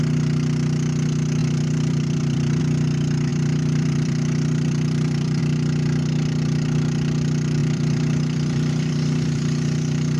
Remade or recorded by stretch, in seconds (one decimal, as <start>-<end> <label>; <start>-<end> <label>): 0.0-1.4 recorded; 1.4-2.6 remade; 2.6-3.3 recorded; 3.3-5.4 remade; 5.4-7.6 recorded; 7.6-10.2 remade